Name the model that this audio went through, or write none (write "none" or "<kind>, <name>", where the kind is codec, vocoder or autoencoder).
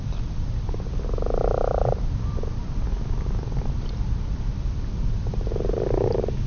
none